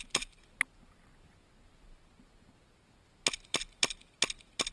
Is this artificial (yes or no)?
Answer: no